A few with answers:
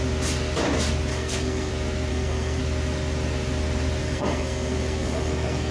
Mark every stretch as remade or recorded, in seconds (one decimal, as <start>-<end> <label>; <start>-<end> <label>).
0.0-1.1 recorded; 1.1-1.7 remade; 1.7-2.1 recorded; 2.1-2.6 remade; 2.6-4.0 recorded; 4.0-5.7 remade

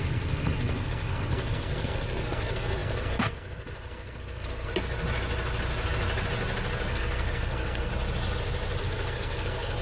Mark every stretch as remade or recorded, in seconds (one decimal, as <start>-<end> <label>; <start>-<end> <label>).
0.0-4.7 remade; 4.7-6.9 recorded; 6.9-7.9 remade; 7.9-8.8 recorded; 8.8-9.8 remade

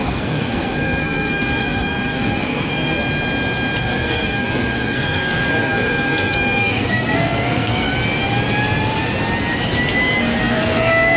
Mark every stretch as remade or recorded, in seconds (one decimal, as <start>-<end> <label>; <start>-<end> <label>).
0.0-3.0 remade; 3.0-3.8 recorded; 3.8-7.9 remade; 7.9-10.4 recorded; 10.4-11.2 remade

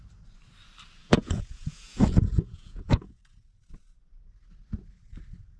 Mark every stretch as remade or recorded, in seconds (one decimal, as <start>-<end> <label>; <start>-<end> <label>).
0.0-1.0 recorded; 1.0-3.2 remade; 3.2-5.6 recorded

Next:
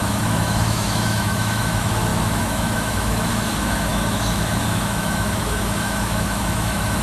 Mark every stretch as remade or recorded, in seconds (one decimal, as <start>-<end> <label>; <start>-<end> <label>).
0.0-7.0 remade